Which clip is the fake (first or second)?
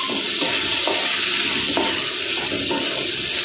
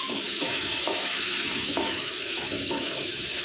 second